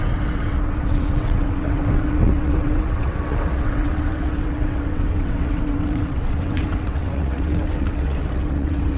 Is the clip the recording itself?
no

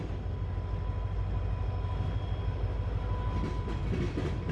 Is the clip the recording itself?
yes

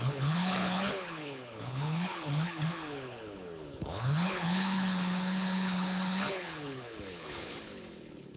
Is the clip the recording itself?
no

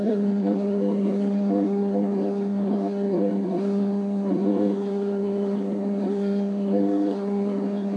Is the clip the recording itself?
no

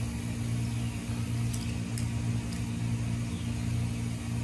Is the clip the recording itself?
yes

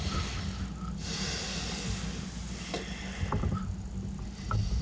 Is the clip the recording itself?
yes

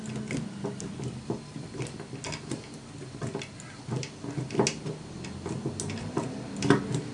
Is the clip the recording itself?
yes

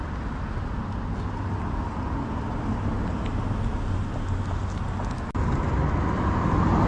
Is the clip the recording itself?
yes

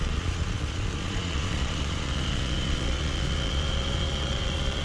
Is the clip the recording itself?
no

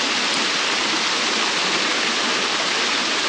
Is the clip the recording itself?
yes